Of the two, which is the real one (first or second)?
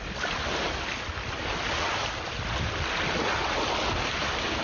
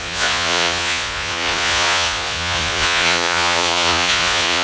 first